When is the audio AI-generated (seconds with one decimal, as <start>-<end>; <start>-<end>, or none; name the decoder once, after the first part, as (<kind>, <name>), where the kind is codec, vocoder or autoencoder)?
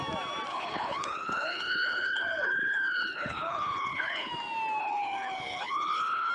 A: 0.5-4.3 (codec, HILCodec); 4.8-6.3